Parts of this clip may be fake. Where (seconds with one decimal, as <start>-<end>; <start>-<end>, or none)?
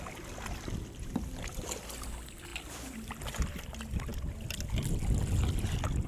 none